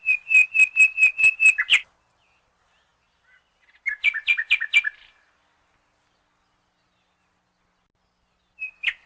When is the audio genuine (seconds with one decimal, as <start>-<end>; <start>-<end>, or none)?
0.0-9.1

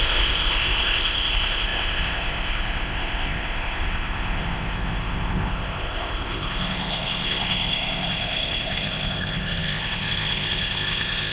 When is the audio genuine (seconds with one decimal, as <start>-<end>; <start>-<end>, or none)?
none

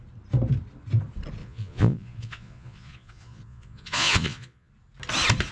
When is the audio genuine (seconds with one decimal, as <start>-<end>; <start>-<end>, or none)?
0.0-1.4; 4.7-5.5

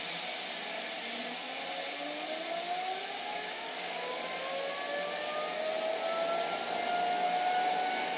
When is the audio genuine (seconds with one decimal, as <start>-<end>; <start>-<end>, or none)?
0.0-3.3; 4.2-8.2

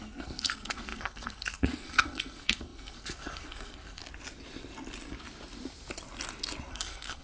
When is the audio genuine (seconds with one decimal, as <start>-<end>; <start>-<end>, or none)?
4.0-6.7

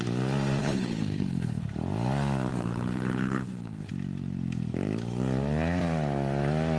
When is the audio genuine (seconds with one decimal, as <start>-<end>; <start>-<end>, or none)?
0.0-0.6; 1.6-2.5; 3.9-6.8